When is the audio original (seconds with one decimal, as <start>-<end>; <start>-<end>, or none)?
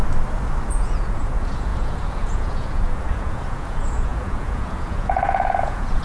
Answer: 0.0-0.7